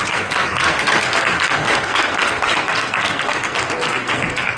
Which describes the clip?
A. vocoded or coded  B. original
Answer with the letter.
A